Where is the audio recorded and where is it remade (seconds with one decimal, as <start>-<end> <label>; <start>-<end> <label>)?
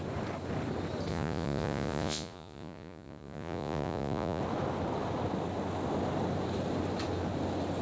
0.0-1.1 recorded; 1.1-4.4 remade; 4.4-7.8 recorded